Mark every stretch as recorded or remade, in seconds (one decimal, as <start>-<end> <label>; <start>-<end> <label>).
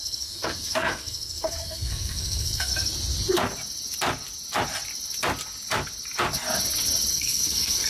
0.0-2.7 remade; 2.7-7.1 recorded; 7.1-7.9 remade